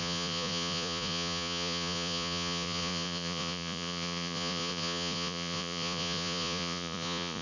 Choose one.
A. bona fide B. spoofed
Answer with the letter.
B